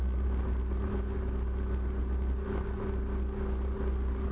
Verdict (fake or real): real